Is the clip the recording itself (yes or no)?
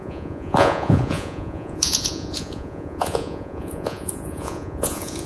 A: no